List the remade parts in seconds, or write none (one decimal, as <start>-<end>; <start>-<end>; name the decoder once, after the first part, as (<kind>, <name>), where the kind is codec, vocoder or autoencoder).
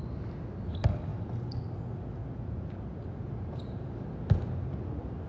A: 2.2-3.9 (vocoder, Vocos)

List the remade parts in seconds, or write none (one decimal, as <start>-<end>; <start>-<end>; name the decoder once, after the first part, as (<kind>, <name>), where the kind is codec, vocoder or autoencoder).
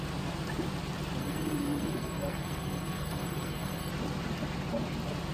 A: 1.2-3.9 (codec, SNAC)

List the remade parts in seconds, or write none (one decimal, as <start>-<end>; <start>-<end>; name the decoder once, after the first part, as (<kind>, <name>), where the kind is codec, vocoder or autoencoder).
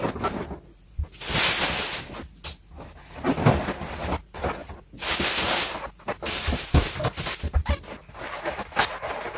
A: none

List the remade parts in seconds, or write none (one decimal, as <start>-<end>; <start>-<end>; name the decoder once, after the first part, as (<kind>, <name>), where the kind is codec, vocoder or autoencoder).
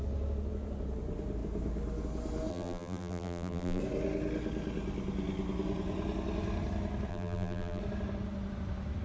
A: 2.5-3.8 (vocoder, BigVGAN v2); 7.1-7.8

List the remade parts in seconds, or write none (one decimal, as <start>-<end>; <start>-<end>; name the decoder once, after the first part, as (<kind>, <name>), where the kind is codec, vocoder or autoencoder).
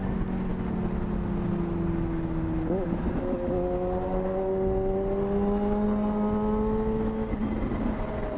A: none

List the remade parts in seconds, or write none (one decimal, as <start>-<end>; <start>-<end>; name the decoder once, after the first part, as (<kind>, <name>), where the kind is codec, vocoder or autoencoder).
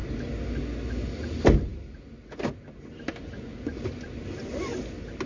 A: none